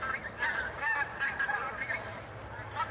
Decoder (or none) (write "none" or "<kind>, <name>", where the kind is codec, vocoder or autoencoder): none